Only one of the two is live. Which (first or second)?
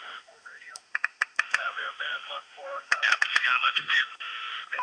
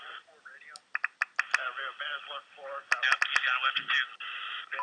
second